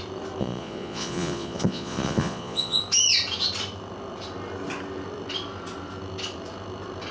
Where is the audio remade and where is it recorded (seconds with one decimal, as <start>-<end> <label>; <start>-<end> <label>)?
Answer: 0.0-0.4 recorded; 0.4-2.8 remade; 2.8-7.1 recorded